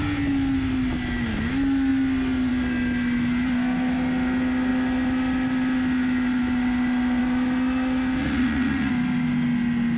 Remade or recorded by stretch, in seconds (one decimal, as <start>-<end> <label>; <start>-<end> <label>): 0.0-8.2 recorded; 8.2-8.9 remade; 8.9-10.0 recorded